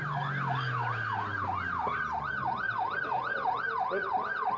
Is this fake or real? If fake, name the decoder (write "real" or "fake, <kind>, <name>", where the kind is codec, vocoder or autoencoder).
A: real